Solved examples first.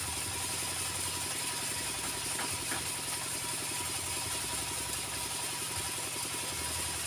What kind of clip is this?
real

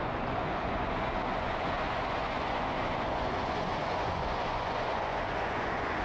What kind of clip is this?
fake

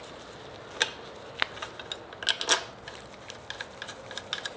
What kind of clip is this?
real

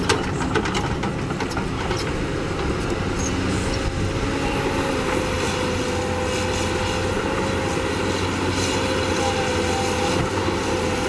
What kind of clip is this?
real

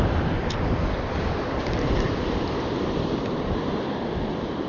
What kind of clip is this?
fake